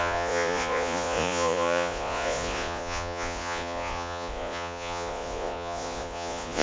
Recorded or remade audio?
remade